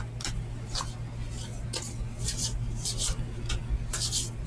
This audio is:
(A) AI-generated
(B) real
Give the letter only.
B